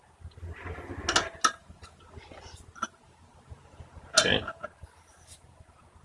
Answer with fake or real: real